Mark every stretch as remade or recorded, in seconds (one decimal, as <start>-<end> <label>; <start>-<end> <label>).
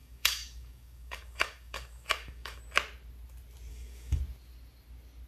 0.0-2.6 remade; 2.6-3.7 recorded; 3.7-4.2 remade; 4.2-5.3 recorded